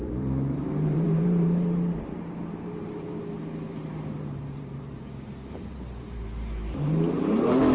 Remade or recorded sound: remade